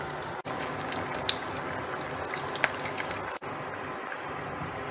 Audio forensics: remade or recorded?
recorded